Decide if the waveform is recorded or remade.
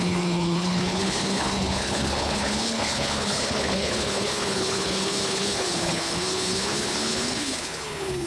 remade